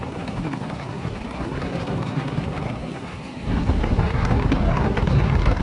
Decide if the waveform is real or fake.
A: fake